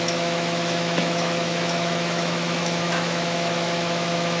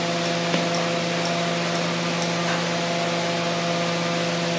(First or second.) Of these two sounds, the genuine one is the second